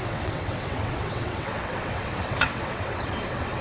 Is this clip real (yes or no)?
no